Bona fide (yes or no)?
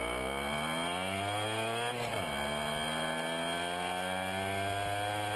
yes